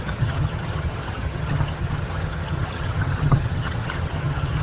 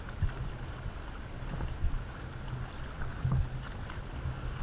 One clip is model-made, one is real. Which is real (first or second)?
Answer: second